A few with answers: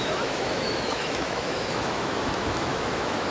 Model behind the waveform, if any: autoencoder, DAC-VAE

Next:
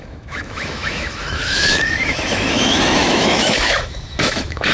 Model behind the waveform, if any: autoencoder, DAC-VAE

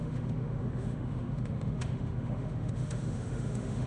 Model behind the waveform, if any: autoencoder, DAC-VAE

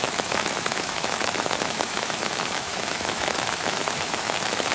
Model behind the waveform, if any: autoencoder, DAC-VAE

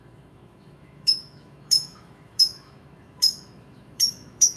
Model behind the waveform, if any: autoencoder, DAC-VAE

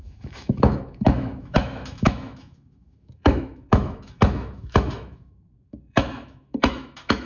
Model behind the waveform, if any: autoencoder, DAC-VAE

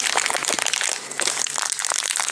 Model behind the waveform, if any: none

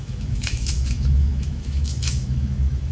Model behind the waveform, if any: autoencoder, DAC-VAE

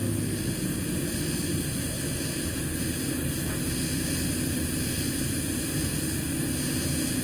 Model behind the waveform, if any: none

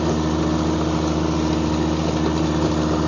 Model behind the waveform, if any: none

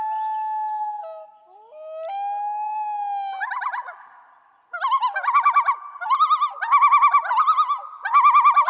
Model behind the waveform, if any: none